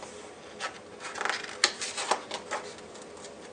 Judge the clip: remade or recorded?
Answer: recorded